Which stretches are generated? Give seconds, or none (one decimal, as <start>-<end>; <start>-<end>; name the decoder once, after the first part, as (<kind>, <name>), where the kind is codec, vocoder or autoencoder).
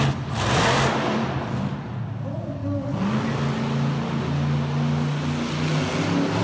none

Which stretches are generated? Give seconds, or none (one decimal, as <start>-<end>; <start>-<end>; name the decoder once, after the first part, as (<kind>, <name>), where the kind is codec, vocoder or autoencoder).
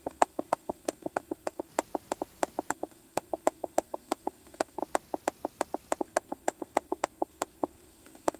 0.0-1.7 (codec, SNAC); 2.7-4.8; 6.0-8.4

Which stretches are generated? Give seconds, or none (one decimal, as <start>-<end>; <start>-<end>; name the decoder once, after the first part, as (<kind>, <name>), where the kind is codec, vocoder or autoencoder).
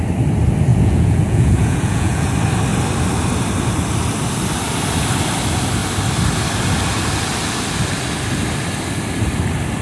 0.7-2.3 (vocoder, Vocos)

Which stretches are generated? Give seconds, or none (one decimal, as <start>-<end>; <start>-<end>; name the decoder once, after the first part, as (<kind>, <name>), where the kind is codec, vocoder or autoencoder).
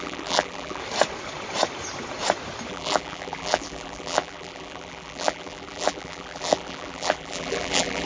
0.0-0.8 (vocoder, BigVGAN v2); 2.7-8.1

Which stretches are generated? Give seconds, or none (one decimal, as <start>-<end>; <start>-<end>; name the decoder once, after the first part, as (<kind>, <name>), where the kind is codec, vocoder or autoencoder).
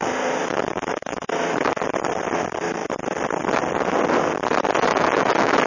0.4-1.7 (autoencoder, DAC-VAE); 4.9-5.7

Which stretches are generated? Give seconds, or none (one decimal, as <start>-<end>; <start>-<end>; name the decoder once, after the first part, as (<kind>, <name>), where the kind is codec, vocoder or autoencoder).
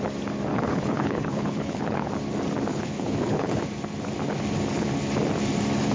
0.5-2.1 (codec, HILCodec); 2.7-3.6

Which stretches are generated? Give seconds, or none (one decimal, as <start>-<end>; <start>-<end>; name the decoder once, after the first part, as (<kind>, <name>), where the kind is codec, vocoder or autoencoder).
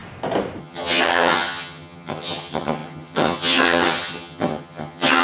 0.6-5.2 (vocoder, HiFi-GAN)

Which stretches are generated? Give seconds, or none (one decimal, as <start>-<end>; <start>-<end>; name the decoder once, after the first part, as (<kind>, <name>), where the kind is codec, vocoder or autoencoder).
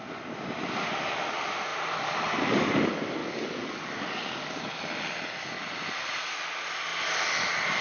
3.2-4.8 (codec, DAC)